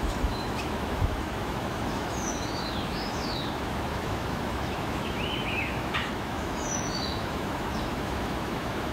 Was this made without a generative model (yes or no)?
no